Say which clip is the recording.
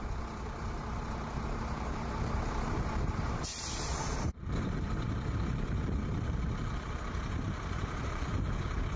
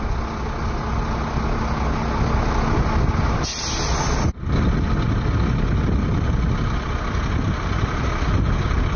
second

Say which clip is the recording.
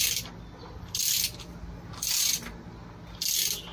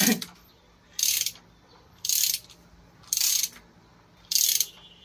first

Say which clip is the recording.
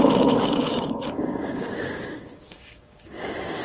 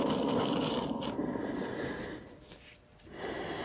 second